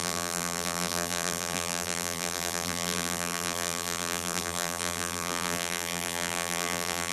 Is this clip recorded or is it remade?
remade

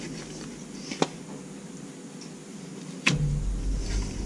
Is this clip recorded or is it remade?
recorded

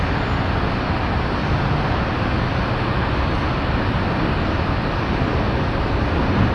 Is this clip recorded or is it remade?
recorded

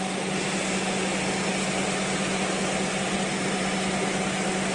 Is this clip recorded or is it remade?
recorded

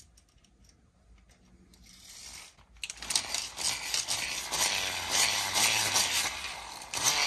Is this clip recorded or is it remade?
recorded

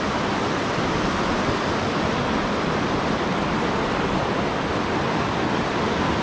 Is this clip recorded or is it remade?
recorded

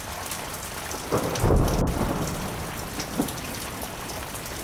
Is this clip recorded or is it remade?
remade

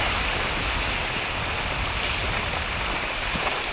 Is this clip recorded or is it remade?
recorded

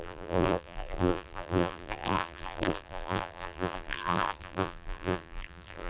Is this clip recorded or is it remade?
remade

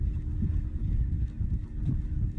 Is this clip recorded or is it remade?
recorded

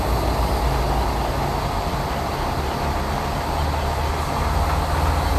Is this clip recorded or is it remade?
recorded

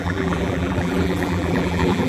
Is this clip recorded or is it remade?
remade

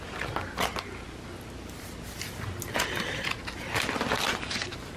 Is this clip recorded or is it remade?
recorded